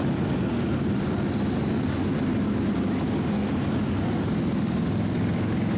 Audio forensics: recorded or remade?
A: recorded